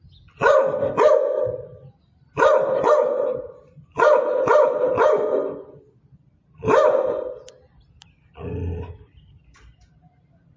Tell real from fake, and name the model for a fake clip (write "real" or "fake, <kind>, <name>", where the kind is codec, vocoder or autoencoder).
real